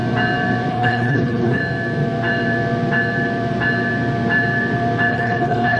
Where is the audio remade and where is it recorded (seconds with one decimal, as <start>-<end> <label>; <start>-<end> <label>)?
0.0-0.7 recorded; 0.7-1.6 remade; 1.6-5.1 recorded; 5.1-5.8 remade